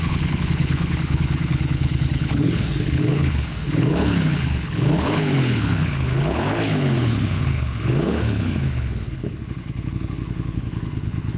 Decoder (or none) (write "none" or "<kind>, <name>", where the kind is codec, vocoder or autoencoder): codec, HILCodec